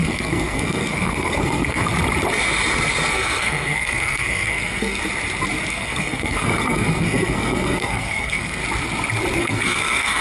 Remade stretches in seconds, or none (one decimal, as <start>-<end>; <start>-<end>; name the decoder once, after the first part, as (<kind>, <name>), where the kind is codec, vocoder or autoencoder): 0.0-1.9 (codec, SNAC); 3.1-5.0; 5.7-8.6; 9.4-10.2